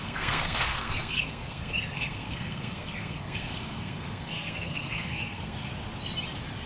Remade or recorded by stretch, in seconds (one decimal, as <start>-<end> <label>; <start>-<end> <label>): 0.0-5.7 remade; 5.7-6.7 recorded